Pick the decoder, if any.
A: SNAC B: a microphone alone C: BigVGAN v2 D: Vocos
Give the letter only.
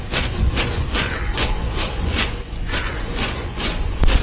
D